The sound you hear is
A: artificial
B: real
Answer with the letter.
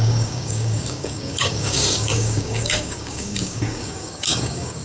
A